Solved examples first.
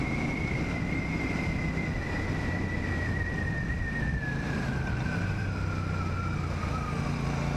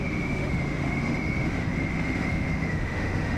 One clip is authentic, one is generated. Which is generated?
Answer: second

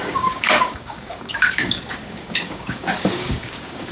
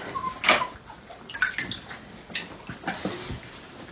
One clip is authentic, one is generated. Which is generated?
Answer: first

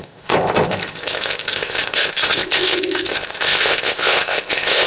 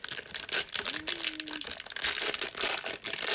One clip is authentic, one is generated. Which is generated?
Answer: first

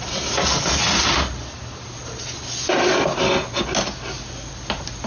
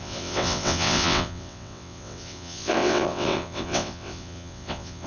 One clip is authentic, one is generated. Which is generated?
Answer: second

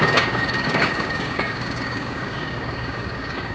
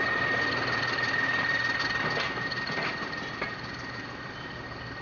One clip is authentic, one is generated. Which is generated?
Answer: first